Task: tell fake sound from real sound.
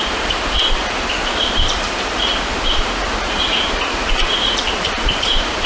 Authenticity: fake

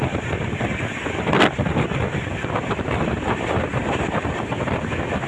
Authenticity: real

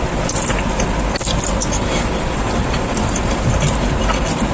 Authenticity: real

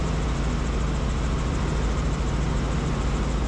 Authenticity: real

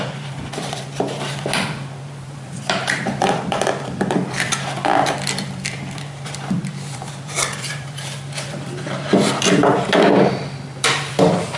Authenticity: fake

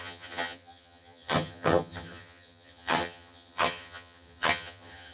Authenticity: fake